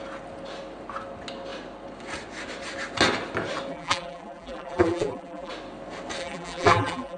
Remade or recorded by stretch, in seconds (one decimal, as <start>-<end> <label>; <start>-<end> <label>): 0.0-3.7 recorded; 3.7-5.5 remade; 5.5-6.2 recorded; 6.2-7.2 remade